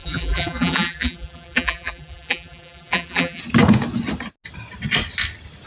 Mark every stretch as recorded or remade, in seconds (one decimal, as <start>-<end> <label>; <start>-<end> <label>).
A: 0.0-3.4 remade; 3.4-5.7 recorded